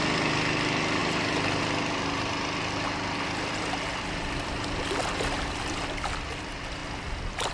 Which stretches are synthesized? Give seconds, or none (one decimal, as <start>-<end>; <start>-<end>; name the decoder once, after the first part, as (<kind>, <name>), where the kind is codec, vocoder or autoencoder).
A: none